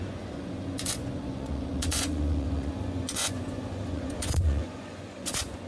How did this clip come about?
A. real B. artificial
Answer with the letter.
B